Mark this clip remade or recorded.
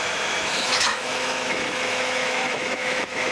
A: remade